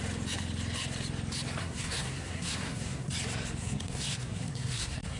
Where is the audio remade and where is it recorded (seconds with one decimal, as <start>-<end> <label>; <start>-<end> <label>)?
0.0-1.6 recorded; 1.6-3.1 remade; 3.1-3.6 recorded; 3.6-5.2 remade